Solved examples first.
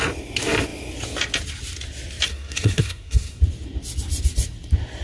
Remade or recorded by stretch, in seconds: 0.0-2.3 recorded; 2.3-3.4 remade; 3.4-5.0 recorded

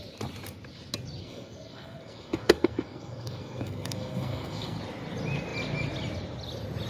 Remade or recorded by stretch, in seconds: 0.0-1.2 recorded; 1.2-4.8 remade; 4.8-6.9 recorded

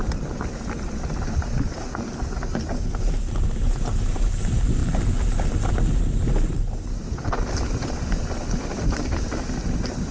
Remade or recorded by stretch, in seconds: 0.0-10.1 recorded

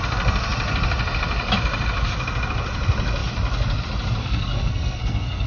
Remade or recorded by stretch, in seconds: 0.0-4.2 recorded; 4.2-5.5 remade

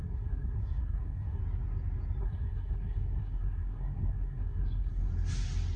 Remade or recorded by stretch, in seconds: 0.0-1.4 remade; 1.4-2.2 recorded; 2.2-5.1 remade; 5.1-5.8 recorded

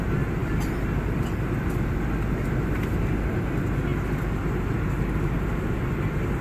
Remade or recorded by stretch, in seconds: 0.0-6.4 recorded